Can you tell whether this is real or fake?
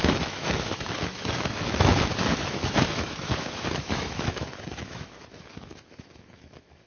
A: fake